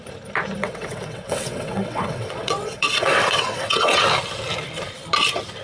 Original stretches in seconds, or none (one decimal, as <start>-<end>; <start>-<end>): 0.0-0.6; 4.0-5.6